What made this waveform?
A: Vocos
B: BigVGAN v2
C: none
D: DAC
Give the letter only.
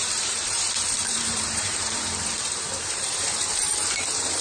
B